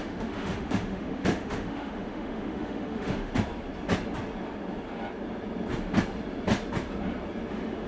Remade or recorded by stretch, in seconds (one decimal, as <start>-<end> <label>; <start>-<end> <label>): 0.0-3.3 remade; 3.3-7.5 recorded; 7.5-7.9 remade